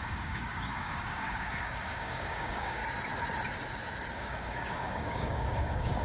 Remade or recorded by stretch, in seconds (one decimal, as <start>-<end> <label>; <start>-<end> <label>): 0.0-2.8 remade; 2.8-4.1 recorded; 4.1-6.0 remade